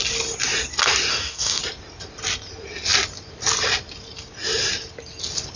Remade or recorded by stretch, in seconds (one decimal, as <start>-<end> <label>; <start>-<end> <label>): 0.0-1.1 recorded; 1.1-1.6 remade; 1.6-5.6 recorded